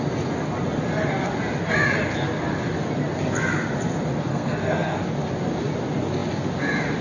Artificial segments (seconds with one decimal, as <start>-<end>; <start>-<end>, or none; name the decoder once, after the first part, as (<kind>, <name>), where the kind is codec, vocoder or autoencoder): 4.3-5.0 (codec, SNAC)